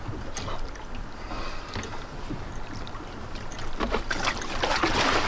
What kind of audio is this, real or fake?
real